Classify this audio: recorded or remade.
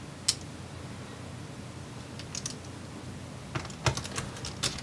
recorded